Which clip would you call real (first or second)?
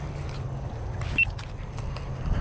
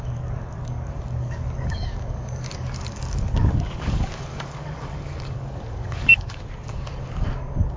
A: first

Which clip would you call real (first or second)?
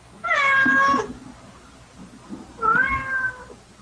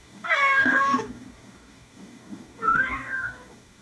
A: first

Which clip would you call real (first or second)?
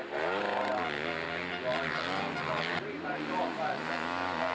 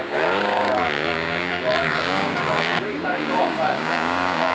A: first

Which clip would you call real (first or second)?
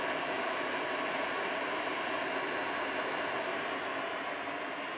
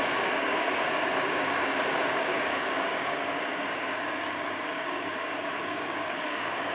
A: first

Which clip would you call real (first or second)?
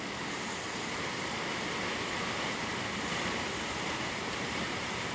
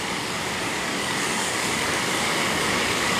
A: first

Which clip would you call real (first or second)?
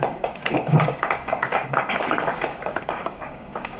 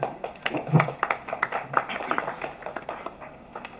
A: second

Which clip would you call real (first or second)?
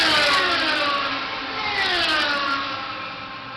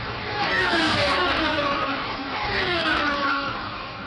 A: first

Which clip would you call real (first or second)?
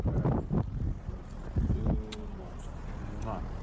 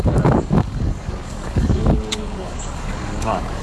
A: first